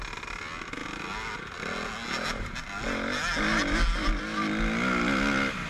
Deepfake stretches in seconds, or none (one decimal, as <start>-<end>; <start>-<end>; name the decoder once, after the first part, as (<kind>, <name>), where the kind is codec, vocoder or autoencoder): none